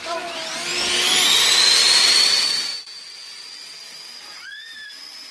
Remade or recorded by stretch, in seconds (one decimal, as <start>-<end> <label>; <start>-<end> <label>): 0.0-0.7 remade; 0.7-1.7 recorded; 1.7-2.7 remade; 2.7-5.3 recorded